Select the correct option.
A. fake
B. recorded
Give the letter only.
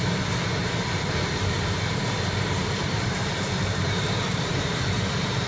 A